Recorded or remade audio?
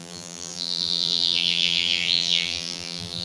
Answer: remade